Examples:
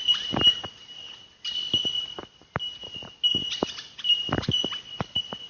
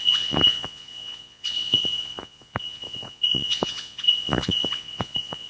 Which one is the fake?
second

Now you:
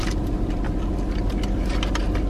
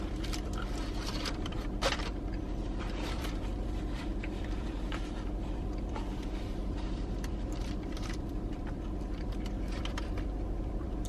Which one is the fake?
second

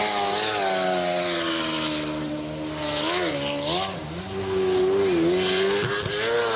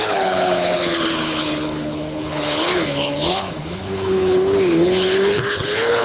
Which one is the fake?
second